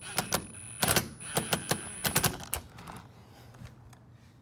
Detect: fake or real real